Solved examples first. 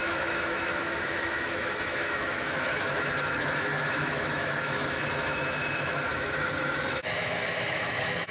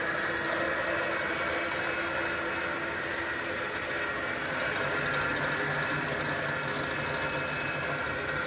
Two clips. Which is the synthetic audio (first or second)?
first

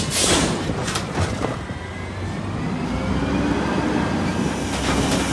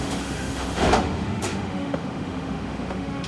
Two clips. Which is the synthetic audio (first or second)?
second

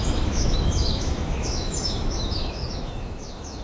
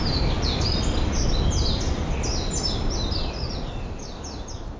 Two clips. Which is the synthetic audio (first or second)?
first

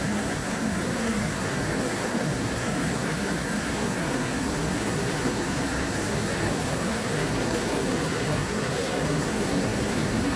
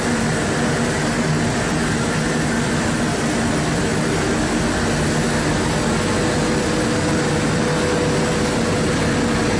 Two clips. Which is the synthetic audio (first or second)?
first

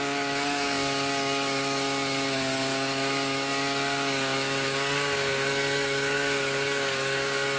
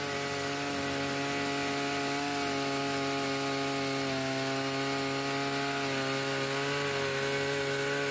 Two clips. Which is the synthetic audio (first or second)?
first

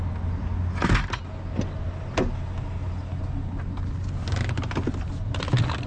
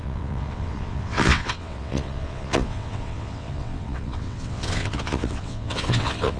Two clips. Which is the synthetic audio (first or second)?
second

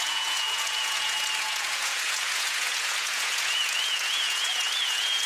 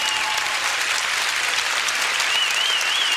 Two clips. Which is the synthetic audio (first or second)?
first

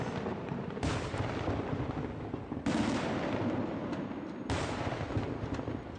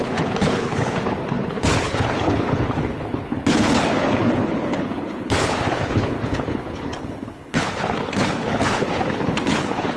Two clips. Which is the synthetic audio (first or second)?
second